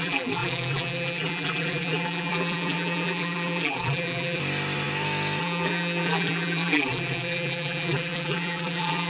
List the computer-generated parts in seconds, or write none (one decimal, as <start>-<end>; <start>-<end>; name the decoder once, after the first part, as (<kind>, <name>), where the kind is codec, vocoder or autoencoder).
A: 0.0-4.4 (vocoder, BigVGAN v2); 5.4-9.1